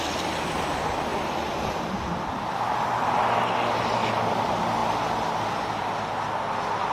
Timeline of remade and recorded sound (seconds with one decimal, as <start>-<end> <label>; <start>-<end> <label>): 0.0-6.9 recorded